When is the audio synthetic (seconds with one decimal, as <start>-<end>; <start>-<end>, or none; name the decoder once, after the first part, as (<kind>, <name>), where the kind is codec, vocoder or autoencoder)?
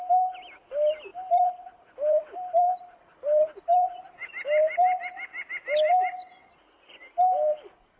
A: 1.1-4.0 (vocoder, BigVGAN v2); 4.6-5.5